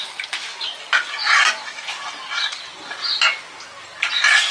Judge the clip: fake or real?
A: real